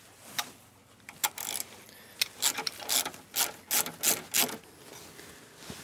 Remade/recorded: recorded